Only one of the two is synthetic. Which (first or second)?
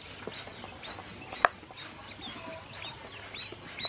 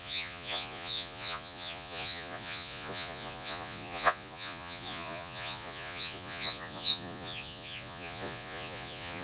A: second